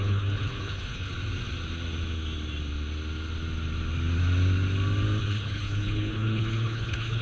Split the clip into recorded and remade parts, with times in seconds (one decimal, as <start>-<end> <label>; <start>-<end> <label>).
0.0-1.1 remade; 1.1-5.2 recorded; 5.2-7.2 remade